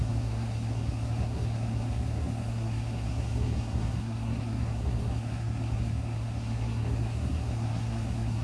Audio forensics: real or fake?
fake